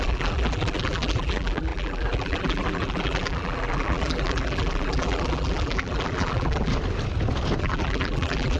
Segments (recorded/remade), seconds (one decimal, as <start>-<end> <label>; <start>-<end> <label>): 0.0-6.7 remade; 6.7-7.6 recorded; 7.6-8.6 remade